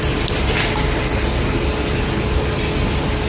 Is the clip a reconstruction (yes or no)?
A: no